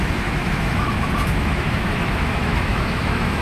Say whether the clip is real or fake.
fake